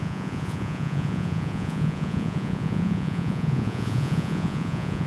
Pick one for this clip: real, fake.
fake